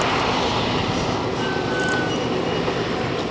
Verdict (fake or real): real